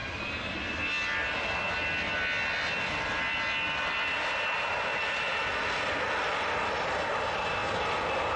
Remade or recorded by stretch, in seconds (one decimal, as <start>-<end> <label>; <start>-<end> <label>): 0.0-1.6 remade; 1.6-8.4 recorded

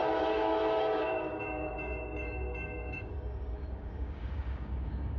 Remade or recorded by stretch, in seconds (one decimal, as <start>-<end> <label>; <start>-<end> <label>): 0.0-5.2 remade

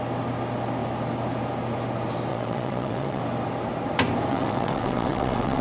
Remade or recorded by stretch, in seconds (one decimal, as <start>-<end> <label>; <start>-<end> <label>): 0.0-2.3 recorded; 2.3-3.2 remade; 3.2-4.3 recorded; 4.3-5.6 remade